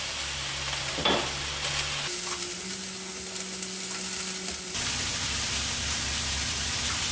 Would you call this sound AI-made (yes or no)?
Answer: no